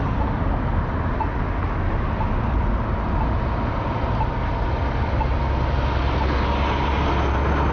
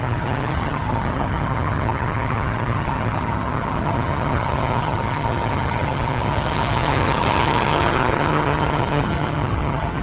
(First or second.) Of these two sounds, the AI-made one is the second